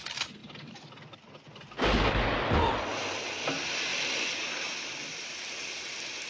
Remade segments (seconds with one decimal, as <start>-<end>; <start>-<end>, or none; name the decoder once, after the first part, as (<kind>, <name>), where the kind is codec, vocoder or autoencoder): 0.4-2.1 (vocoder, BigVGAN v2); 3.9-4.9